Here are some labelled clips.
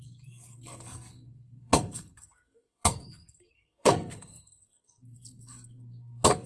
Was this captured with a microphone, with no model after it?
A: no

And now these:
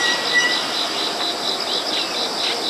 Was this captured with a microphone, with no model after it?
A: yes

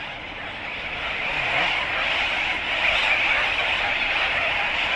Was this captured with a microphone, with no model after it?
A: yes